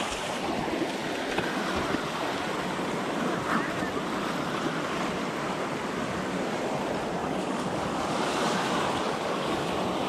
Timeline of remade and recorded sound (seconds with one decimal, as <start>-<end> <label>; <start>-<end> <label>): 0.0-7.2 recorded; 7.2-9.7 remade; 9.7-10.1 recorded